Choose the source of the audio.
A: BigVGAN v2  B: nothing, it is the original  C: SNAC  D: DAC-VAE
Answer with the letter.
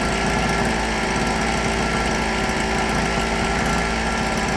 B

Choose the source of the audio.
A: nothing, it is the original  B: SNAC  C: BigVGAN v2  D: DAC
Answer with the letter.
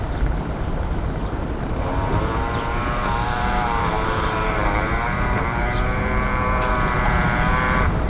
C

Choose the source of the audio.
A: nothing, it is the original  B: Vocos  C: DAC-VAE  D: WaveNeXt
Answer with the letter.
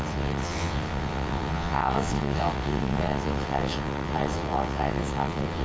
D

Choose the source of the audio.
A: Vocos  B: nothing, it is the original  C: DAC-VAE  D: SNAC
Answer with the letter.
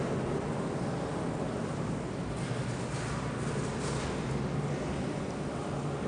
B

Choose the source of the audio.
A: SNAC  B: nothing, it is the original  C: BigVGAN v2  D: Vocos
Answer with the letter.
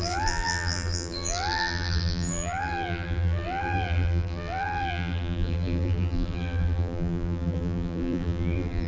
C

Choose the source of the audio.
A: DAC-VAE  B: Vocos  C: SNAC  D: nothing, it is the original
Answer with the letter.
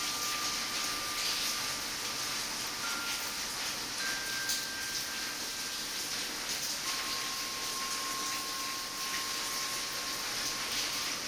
D